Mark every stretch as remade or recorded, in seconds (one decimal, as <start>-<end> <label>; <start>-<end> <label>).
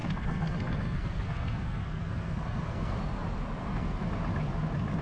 0.0-3.0 remade; 3.0-3.6 recorded; 3.6-4.1 remade; 4.1-5.0 recorded